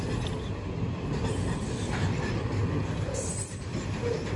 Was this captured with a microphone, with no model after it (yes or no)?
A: yes